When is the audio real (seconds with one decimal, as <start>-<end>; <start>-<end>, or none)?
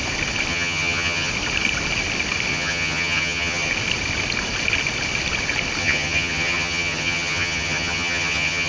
0.0-0.5; 1.3-2.5; 3.7-5.8